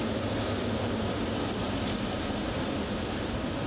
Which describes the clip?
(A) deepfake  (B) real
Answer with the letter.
B